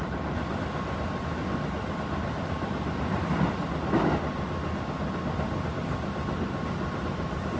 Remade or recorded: recorded